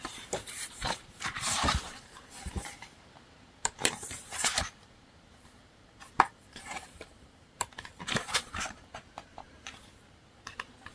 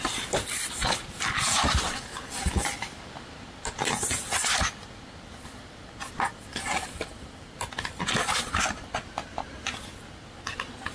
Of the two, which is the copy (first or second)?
first